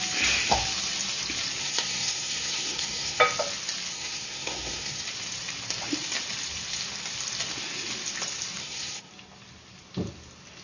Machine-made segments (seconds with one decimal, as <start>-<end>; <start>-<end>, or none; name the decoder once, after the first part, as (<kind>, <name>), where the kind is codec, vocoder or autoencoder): 1.6-3.2 (codec, SNAC); 3.9-5.0; 8.6-9.1